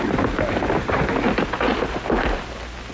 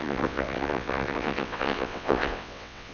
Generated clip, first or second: second